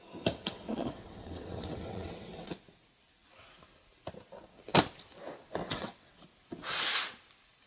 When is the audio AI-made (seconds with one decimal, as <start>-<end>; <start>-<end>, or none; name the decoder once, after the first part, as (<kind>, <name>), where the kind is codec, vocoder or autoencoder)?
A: 0.4-2.5 (vocoder, WaveNeXt); 5.6-6.2